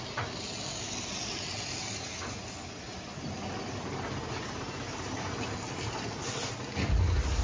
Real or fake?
real